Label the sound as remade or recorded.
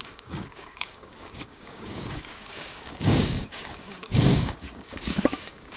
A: remade